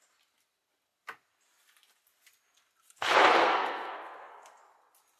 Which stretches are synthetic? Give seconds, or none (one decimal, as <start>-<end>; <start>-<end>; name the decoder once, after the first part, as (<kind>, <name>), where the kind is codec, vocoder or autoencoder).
3.4-4.6 (codec, SNAC)